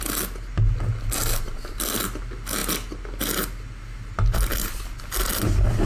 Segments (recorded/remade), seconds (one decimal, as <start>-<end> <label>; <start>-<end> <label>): 0.0-5.9 recorded